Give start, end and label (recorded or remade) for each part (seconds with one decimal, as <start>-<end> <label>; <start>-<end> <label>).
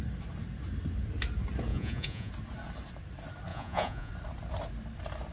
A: 0.0-1.7 recorded; 1.7-2.3 remade; 2.3-3.5 recorded; 3.5-4.1 remade; 4.1-5.3 recorded